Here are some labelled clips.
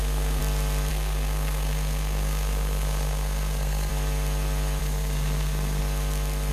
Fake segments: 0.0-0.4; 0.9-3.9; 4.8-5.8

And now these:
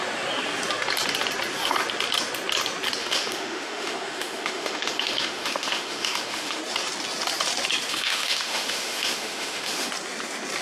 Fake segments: 3.0-6.6; 7.9-9.9

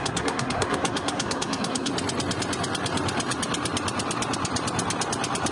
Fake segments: 0.0-1.9

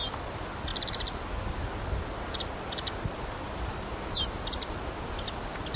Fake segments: none

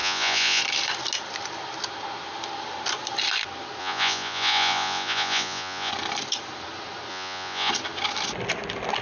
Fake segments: 0.0-0.6; 3.8-5.9; 7.1-7.7

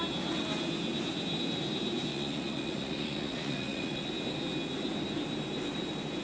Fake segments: 2.1-4.1